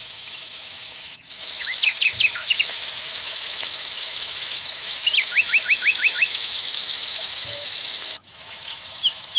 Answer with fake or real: fake